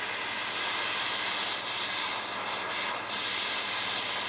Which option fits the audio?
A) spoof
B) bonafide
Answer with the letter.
B